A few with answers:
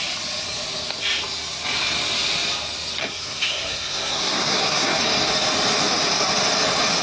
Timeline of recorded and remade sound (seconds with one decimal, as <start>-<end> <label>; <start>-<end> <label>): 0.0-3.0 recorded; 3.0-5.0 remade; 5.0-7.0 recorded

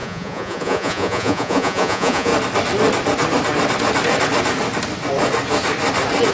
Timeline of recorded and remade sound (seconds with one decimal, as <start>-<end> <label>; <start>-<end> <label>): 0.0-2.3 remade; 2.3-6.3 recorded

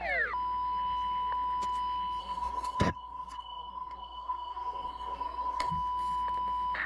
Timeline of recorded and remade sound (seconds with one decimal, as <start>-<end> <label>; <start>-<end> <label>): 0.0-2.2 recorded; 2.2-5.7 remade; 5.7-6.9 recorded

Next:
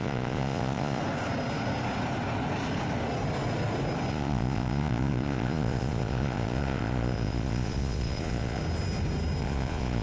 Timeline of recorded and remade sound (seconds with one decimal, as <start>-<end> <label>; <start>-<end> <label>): 0.0-1.0 remade; 1.0-4.1 recorded; 4.1-8.6 remade; 8.6-9.4 recorded; 9.4-10.0 remade

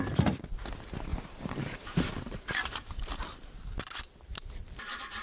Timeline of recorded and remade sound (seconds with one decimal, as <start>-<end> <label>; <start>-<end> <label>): 0.0-1.1 recorded; 1.1-3.7 remade; 3.7-4.3 recorded; 4.3-5.2 remade

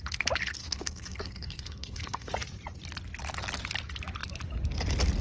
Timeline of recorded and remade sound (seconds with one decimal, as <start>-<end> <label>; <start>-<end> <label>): 0.0-0.6 recorded; 0.6-2.3 remade; 2.3-5.2 recorded